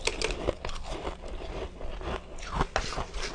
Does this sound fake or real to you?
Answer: real